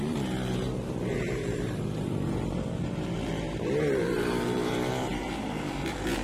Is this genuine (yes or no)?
no